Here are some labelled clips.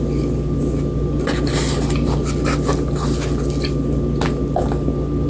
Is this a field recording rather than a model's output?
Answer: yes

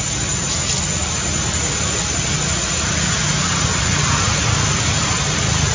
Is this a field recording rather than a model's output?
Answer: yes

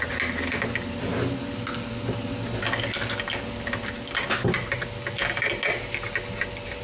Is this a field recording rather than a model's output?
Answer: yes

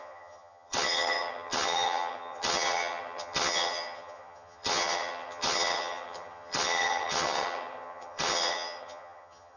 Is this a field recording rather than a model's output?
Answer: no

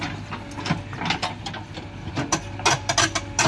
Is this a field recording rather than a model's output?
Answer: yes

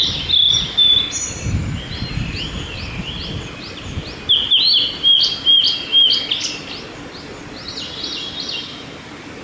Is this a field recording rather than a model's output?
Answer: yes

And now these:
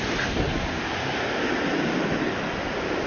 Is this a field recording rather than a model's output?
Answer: yes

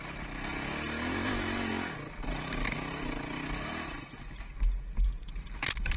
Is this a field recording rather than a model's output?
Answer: yes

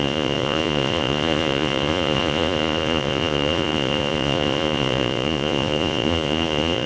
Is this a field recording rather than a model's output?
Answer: no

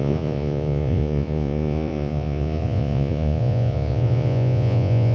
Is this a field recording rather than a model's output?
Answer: no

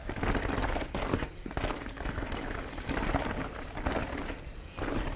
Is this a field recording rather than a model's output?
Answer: yes